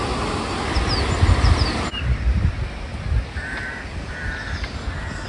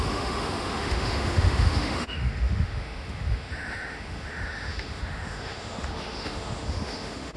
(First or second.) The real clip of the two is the first